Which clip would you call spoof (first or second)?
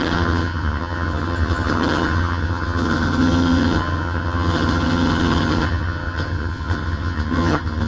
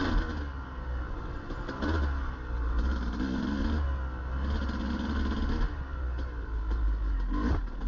first